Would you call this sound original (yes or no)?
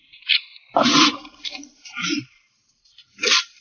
no